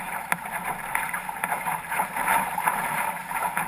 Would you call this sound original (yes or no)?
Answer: no